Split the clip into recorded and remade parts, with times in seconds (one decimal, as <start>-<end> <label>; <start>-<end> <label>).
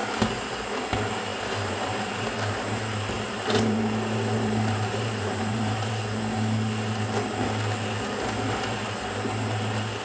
0.0-1.3 recorded; 1.3-5.9 remade; 5.9-10.0 recorded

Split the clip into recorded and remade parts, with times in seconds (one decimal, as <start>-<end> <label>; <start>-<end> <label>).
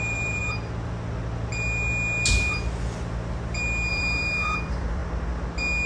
0.0-0.4 remade; 0.4-3.9 recorded; 3.9-5.0 remade; 5.0-5.9 recorded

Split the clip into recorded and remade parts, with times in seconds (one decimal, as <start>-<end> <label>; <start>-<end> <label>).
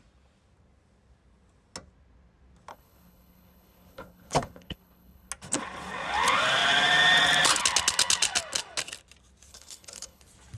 0.0-2.7 recorded; 2.7-5.3 remade; 5.3-9.5 recorded; 9.5-10.2 remade; 10.2-10.6 recorded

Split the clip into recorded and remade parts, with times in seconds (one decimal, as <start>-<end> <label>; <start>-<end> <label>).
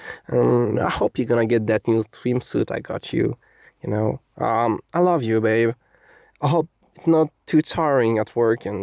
0.0-0.5 recorded; 0.5-2.6 remade; 2.6-8.8 recorded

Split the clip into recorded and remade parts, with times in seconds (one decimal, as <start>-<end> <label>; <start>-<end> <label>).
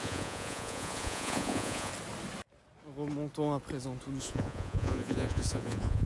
0.0-1.9 remade; 1.9-4.2 recorded; 4.2-6.1 remade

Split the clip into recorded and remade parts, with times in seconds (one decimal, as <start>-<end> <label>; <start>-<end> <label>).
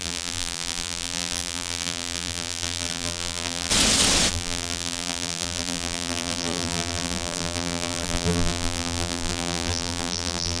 0.0-3.7 remade; 3.7-4.3 recorded; 4.3-10.6 remade